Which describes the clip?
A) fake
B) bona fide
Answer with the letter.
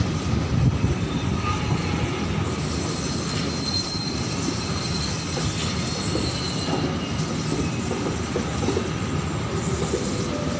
B